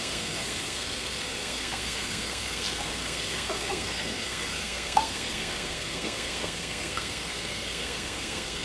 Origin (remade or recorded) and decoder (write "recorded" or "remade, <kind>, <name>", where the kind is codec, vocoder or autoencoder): remade, codec, SNAC